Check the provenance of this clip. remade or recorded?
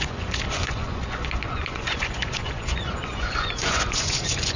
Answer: remade